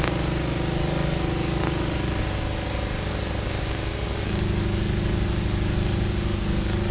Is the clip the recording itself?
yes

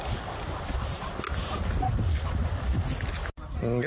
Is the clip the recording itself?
yes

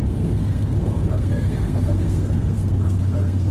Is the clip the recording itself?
no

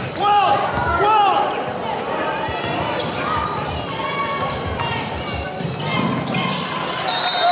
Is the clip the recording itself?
no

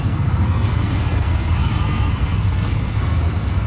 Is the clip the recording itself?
no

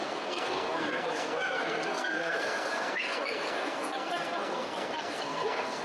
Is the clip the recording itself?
no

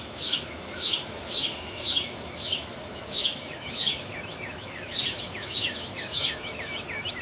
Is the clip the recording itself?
no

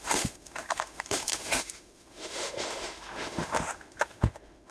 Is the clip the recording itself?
no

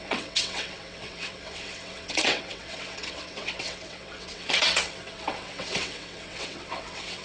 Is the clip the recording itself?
no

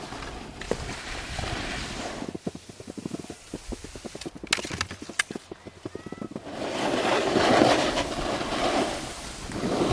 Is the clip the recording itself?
yes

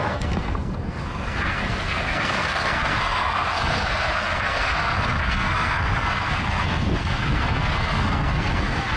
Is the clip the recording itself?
no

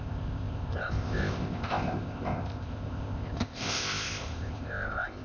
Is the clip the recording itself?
no